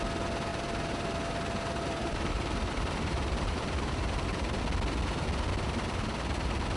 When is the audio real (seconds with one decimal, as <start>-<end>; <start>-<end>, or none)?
0.0-0.5; 4.6-6.8